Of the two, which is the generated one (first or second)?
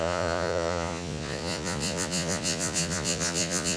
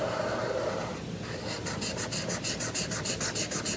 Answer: first